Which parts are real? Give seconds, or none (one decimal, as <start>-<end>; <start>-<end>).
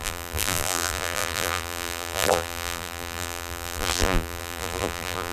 none